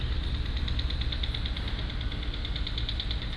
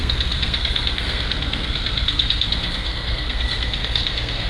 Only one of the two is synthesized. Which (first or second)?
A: second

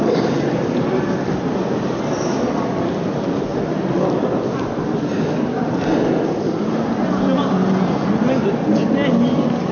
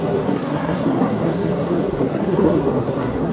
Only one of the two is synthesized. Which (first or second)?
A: second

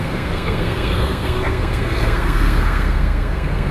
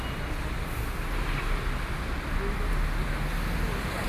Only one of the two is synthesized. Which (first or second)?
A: first